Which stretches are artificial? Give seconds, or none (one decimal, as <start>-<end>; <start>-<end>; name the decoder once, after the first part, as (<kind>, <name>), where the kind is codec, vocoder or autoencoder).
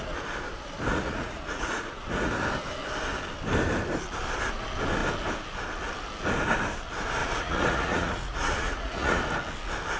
0.9-2.3 (vocoder, Vocos); 7.2-9.2